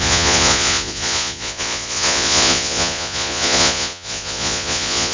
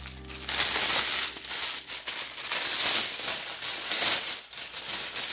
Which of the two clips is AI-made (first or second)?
first